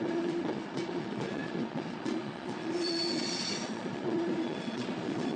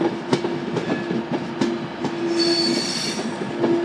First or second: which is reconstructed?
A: first